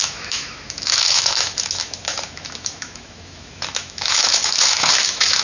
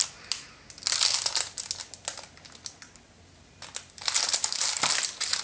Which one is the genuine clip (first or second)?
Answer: second